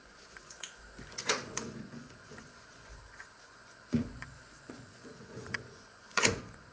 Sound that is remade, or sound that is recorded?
remade